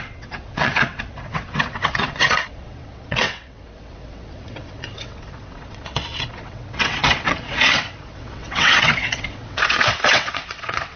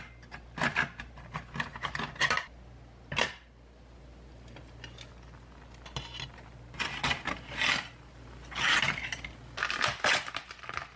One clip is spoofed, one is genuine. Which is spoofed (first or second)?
first